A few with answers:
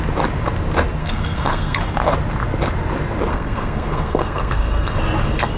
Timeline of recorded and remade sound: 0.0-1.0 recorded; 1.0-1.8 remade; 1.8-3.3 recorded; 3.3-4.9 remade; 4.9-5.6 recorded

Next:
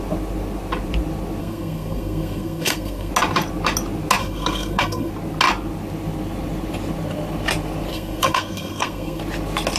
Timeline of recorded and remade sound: 0.0-1.4 recorded; 1.4-3.1 remade; 3.1-4.2 recorded; 4.2-5.1 remade; 5.1-7.9 recorded; 7.9-9.2 remade; 9.2-9.8 recorded